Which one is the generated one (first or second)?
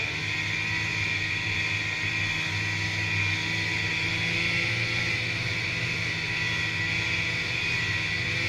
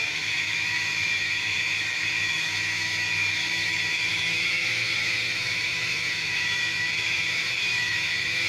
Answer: second